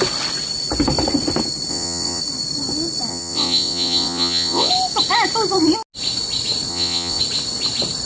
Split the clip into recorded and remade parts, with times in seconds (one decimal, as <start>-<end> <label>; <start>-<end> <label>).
0.0-1.7 recorded; 1.7-2.2 remade; 2.2-3.1 recorded; 3.1-4.7 remade; 4.7-6.7 recorded; 6.7-7.2 remade; 7.2-8.1 recorded